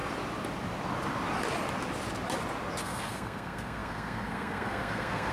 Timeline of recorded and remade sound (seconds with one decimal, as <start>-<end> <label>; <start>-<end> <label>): 0.0-2.8 recorded; 2.8-5.3 remade